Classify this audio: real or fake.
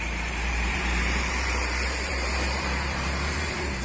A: fake